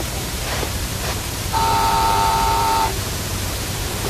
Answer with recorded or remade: remade